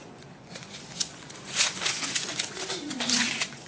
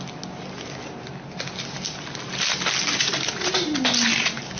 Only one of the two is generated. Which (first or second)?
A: first